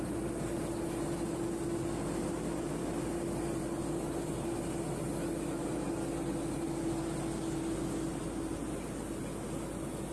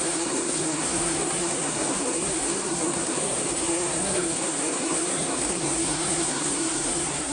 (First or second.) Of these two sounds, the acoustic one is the first